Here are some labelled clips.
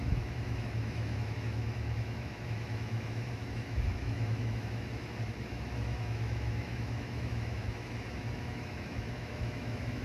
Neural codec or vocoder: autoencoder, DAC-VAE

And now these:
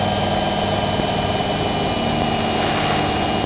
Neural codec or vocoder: none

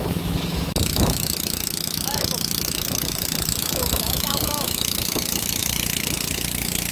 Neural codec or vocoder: autoencoder, DAC-VAE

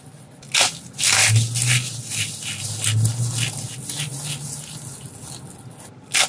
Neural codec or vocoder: none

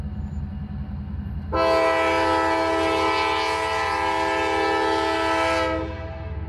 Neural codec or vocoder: none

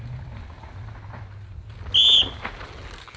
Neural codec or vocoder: none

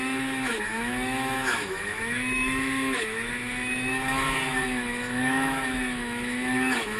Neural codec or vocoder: autoencoder, DAC-VAE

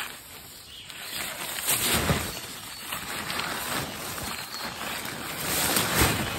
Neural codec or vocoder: none